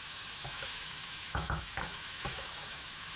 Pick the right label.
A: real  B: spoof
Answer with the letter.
B